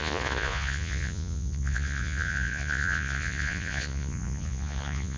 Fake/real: fake